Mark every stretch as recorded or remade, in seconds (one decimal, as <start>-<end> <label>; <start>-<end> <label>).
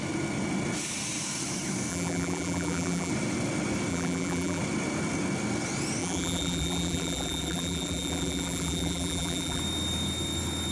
0.0-1.9 recorded; 1.9-3.1 remade; 3.1-3.9 recorded; 3.9-4.6 remade; 4.6-6.0 recorded; 6.0-9.6 remade; 9.6-10.7 recorded